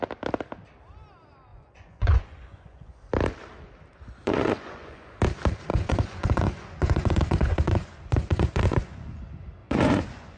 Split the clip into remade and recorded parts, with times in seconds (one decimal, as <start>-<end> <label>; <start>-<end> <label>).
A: 0.0-1.5 recorded; 1.5-3.0 remade; 3.0-4.2 recorded; 4.2-5.2 remade; 5.2-5.7 recorded; 5.7-9.2 remade; 9.2-9.6 recorded; 9.6-10.4 remade